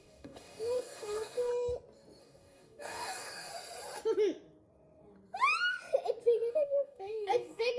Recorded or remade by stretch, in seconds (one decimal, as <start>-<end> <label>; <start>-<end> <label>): 0.0-1.5 remade; 1.5-2.2 recorded; 2.2-3.5 remade; 3.5-6.5 recorded; 6.5-7.8 remade

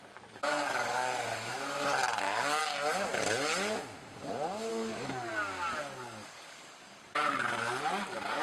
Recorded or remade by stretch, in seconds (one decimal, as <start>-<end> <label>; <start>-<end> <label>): 0.0-1.5 remade; 1.5-2.2 recorded; 2.2-2.6 remade; 2.6-4.7 recorded; 4.7-5.3 remade; 5.3-5.8 recorded; 5.8-8.4 remade